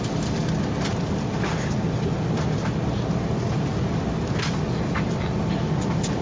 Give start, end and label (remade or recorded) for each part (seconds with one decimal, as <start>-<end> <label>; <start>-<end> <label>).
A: 0.0-6.2 recorded